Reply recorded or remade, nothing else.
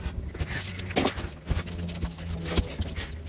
recorded